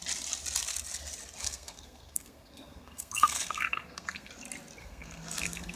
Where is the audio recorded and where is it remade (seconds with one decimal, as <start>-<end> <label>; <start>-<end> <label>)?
0.0-1.4 recorded; 1.4-4.3 remade; 4.3-4.8 recorded; 4.8-5.8 remade

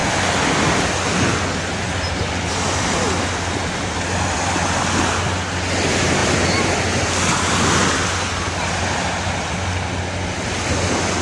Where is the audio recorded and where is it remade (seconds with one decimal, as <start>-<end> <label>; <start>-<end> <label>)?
0.0-11.2 recorded

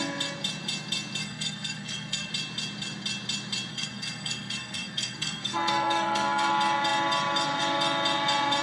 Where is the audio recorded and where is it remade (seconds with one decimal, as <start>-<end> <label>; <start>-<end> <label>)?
0.0-1.2 recorded; 1.2-2.3 remade; 2.3-3.7 recorded; 3.7-6.5 remade; 6.5-8.6 recorded

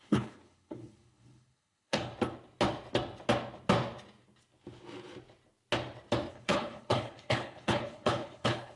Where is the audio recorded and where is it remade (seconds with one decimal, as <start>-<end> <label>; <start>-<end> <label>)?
0.0-2.1 remade; 2.1-6.3 recorded; 6.3-8.8 remade

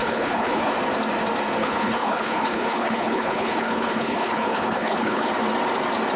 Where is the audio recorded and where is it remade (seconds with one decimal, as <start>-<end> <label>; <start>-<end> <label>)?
0.0-0.7 remade; 0.7-1.6 recorded; 1.6-5.3 remade; 5.3-6.2 recorded

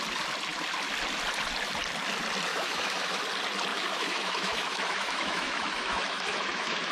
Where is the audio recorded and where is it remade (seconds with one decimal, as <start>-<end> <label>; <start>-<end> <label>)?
0.0-2.5 recorded; 2.5-3.2 remade; 3.2-3.7 recorded; 3.7-6.9 remade